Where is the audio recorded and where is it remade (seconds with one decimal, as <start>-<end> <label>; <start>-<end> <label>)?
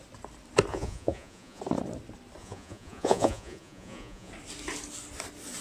0.0-0.7 recorded; 0.7-1.6 remade; 1.6-2.4 recorded; 2.4-4.3 remade; 4.3-5.6 recorded